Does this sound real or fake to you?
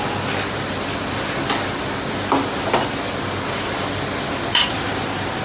real